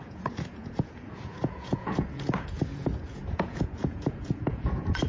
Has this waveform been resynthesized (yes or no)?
yes